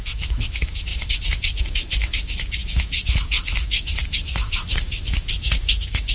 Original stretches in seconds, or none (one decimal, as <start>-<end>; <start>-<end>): none